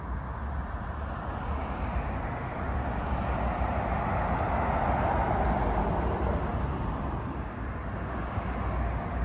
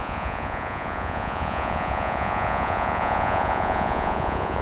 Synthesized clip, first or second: second